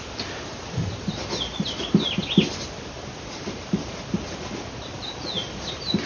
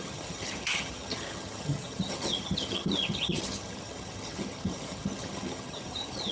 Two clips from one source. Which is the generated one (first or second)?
second